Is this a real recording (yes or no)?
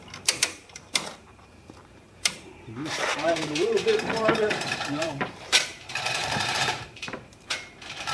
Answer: no